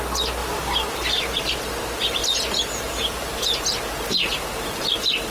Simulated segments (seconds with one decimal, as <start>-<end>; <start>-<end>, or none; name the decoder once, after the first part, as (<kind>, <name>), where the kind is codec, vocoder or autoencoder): 0.4-3.6 (vocoder, BigVGAN v2)